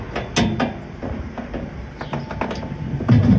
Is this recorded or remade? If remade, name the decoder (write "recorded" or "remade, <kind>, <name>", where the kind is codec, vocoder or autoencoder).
recorded